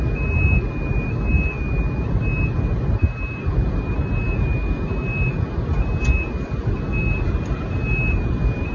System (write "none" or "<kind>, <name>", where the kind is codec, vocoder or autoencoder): none